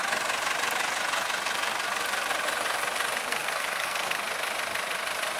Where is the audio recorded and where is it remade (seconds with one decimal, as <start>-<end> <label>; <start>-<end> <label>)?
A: 0.0-3.2 recorded; 3.2-4.2 remade; 4.2-5.4 recorded